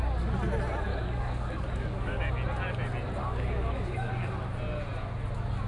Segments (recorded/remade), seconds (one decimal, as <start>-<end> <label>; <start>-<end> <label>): 0.0-0.9 recorded; 0.9-2.2 remade; 2.2-3.2 recorded; 3.2-4.1 remade; 4.1-5.7 recorded